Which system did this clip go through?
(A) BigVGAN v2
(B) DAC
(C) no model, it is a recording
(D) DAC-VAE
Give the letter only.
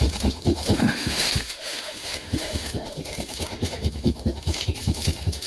D